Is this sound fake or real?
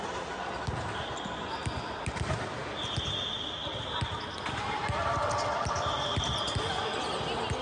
real